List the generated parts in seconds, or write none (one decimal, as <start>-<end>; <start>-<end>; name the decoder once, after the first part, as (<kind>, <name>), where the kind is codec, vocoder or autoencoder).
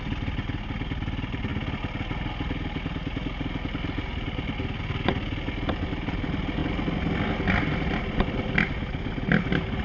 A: none